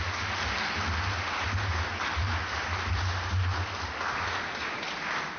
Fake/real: real